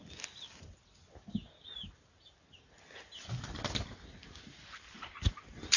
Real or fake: real